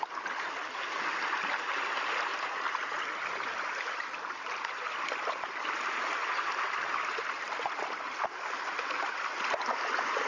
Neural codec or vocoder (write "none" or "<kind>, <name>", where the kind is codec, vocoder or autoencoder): none